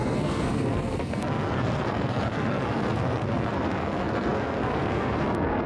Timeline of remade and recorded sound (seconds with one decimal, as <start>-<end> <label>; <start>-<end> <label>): 0.0-5.7 remade